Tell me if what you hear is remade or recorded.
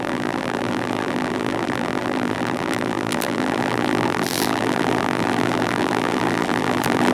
remade